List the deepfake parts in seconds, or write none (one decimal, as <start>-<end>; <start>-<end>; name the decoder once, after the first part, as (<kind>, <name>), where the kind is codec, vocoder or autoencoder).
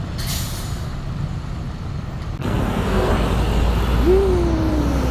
2.4-3.1 (codec, SNAC)